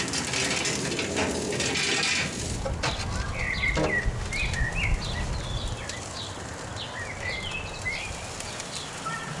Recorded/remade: recorded